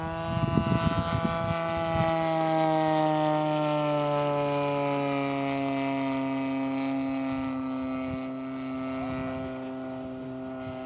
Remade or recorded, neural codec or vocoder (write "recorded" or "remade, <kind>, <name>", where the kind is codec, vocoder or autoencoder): recorded